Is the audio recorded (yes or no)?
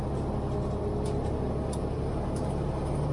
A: yes